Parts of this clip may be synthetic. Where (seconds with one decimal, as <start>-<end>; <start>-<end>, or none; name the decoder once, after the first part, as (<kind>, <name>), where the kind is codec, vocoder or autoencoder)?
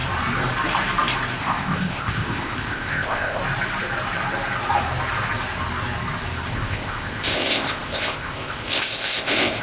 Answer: 1.4-3.4 (codec, ZipCodec); 6.5-9.6